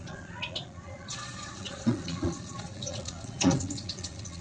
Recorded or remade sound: remade